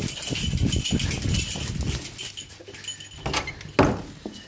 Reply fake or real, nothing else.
real